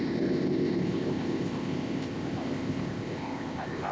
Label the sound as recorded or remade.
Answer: remade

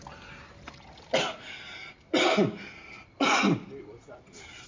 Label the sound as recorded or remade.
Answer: recorded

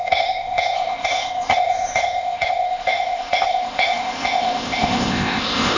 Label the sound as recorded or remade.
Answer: remade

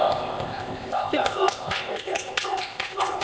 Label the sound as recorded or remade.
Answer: remade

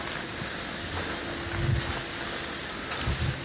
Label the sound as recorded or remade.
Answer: recorded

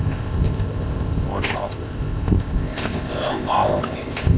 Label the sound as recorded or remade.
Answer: remade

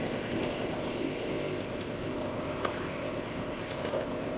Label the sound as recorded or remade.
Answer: remade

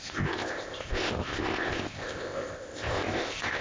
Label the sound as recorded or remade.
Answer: remade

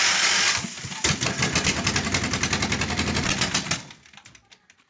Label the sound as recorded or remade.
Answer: recorded